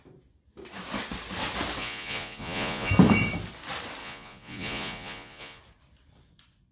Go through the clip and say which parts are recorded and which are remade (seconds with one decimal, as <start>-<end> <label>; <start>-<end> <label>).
0.0-1.8 recorded; 1.8-2.9 remade; 2.9-4.0 recorded; 4.0-5.6 remade; 5.6-6.7 recorded